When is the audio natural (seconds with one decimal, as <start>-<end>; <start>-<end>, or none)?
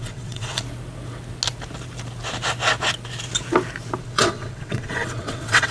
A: 0.6-4.0